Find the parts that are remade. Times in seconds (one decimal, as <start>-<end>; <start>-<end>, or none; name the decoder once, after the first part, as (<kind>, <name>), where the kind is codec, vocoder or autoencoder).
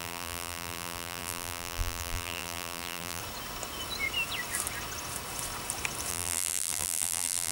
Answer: 0.0-3.2 (vocoder, BigVGAN v2); 6.1-7.5